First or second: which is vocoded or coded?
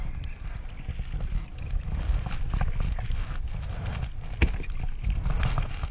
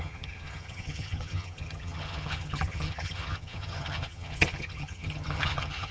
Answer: second